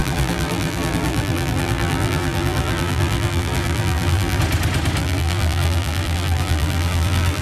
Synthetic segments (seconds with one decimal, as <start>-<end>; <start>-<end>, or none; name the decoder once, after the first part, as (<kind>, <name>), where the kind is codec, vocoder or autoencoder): 0.0-4.4 (vocoder, BigVGAN v2); 5.0-7.4